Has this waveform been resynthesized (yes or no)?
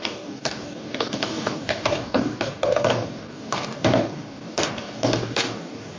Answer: yes